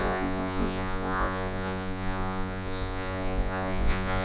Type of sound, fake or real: fake